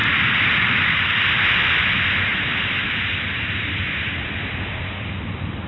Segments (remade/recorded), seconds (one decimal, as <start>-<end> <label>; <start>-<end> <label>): 0.0-5.7 recorded